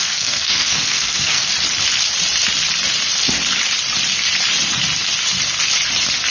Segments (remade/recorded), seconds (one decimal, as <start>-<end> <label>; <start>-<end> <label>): 0.0-1.5 remade; 1.5-6.3 recorded